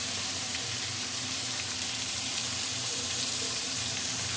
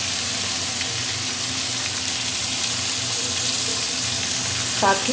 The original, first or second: second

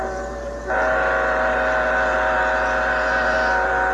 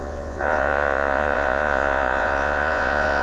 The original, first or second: first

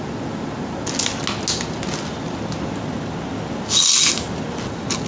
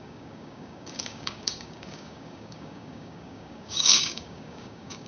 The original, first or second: first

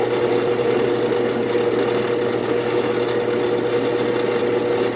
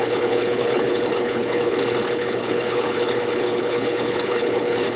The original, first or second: first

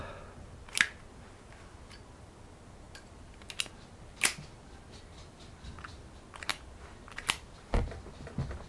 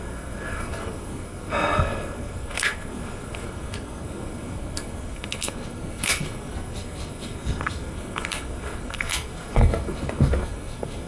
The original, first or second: first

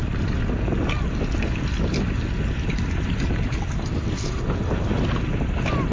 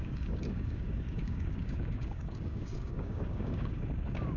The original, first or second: first